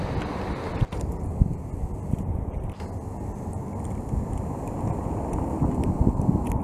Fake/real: real